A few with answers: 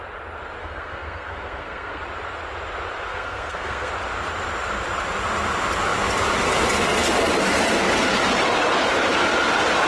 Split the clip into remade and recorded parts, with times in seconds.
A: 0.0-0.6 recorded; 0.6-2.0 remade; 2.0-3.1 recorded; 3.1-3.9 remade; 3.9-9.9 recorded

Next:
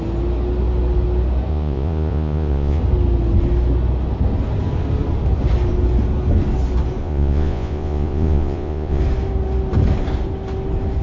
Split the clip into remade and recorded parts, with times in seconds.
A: 0.0-1.5 recorded; 1.5-2.8 remade; 2.8-7.0 recorded; 7.0-9.0 remade; 9.0-11.0 recorded

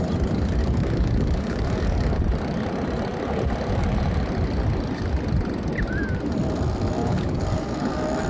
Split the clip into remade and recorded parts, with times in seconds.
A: 0.0-0.6 recorded; 0.6-2.2 remade; 2.2-7.0 recorded; 7.0-7.9 remade; 7.9-8.3 recorded